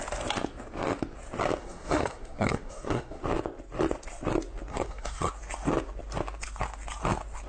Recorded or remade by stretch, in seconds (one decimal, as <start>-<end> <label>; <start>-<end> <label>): 0.0-1.6 recorded; 1.6-3.2 remade; 3.2-4.7 recorded; 4.7-5.3 remade; 5.3-7.5 recorded

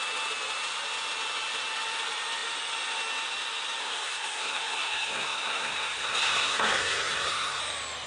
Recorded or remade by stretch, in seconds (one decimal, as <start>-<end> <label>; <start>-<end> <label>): 0.0-3.8 recorded; 3.8-7.6 remade; 7.6-8.1 recorded

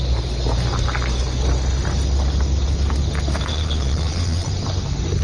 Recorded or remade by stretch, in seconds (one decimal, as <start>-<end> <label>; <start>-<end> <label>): 0.0-3.5 recorded; 3.5-4.5 remade; 4.5-5.2 recorded

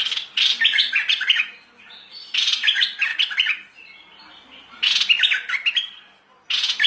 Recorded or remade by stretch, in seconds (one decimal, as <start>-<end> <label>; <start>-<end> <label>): 0.0-6.9 recorded